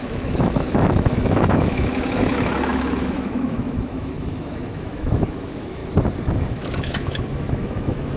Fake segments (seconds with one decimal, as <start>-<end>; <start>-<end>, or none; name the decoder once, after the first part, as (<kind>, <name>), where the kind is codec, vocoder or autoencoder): 0.0-5.8 (autoencoder, DAC-VAE); 6.5-8.2